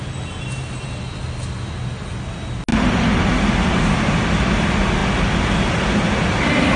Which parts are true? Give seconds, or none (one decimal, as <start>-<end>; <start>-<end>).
0.0-6.8